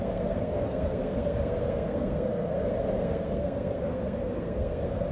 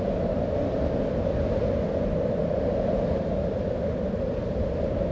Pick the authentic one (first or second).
second